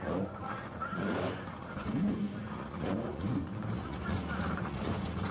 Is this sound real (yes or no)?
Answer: no